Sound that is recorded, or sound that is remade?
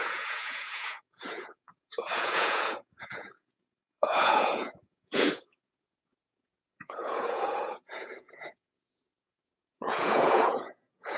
remade